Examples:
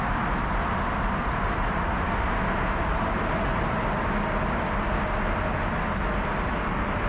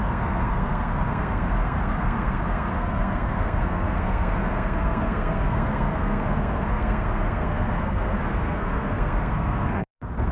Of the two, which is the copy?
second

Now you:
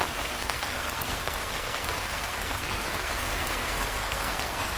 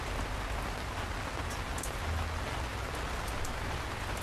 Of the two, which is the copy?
first